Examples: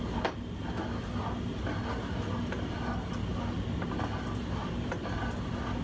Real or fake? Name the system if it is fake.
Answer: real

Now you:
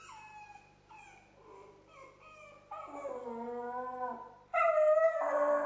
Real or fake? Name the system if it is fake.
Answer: real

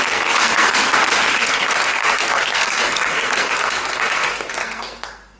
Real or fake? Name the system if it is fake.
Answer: fake, codec, SNAC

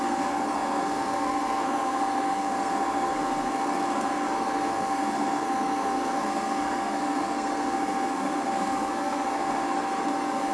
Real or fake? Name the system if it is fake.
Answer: fake, codec, SNAC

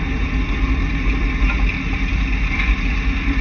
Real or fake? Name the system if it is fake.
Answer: real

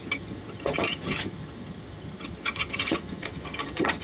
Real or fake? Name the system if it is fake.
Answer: fake, vocoder, HiFi-GAN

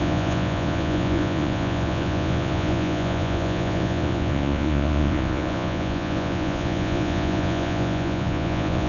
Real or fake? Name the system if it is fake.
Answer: fake, vocoder, Vocos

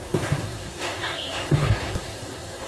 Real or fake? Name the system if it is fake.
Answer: fake, codec, SNAC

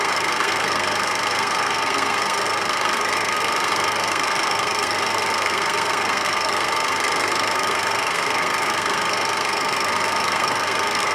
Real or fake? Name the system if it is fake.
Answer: fake, codec, SNAC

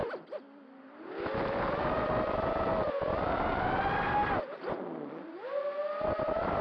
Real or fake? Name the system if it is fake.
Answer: real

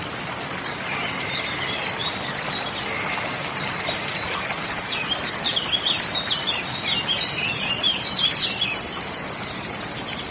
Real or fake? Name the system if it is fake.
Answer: real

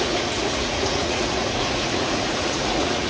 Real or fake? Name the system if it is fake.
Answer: fake, vocoder, Vocos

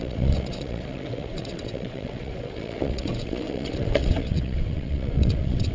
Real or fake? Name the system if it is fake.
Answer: fake, vocoder, WaveNeXt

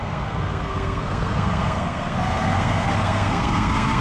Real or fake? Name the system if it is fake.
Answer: fake, codec, SNAC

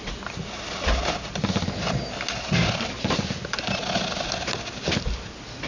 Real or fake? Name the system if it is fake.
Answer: real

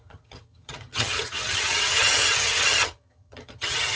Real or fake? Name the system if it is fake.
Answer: fake, vocoder, HiFi-GAN